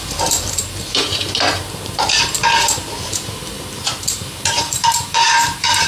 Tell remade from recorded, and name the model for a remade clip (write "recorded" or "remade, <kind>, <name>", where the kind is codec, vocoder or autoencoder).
remade, vocoder, BigVGAN v2